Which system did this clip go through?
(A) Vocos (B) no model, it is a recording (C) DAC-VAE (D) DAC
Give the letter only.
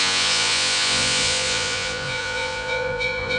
A